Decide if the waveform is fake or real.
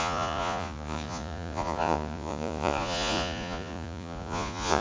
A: fake